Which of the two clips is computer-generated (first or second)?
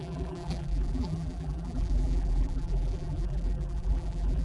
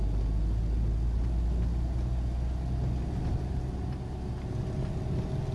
first